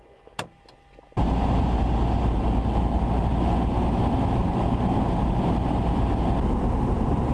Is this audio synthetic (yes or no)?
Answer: no